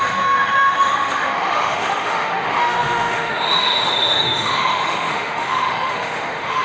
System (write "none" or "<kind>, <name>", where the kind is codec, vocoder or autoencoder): autoencoder, DAC-VAE